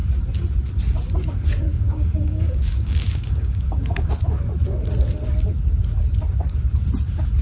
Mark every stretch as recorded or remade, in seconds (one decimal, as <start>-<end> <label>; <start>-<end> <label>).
0.0-1.7 recorded; 1.7-4.1 remade; 4.1-7.4 recorded